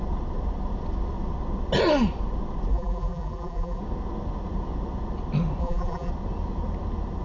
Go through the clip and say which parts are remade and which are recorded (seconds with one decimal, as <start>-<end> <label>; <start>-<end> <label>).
0.0-2.7 recorded; 2.7-3.8 remade; 3.8-5.6 recorded; 5.6-6.1 remade; 6.1-7.2 recorded